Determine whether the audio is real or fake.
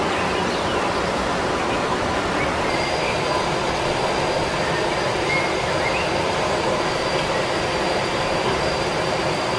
real